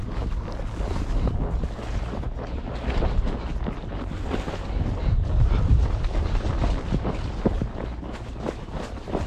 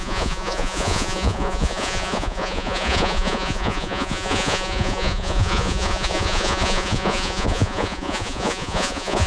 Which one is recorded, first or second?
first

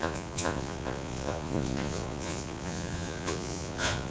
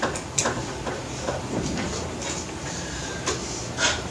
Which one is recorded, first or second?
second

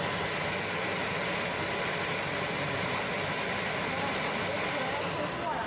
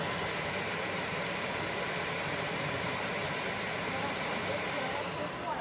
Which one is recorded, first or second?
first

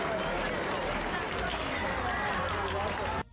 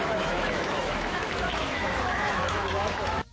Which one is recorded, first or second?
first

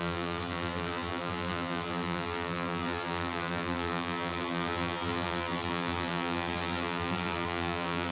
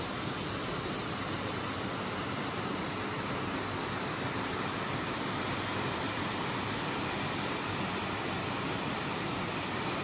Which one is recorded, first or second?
second